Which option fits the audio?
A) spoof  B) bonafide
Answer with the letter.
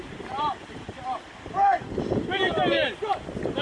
B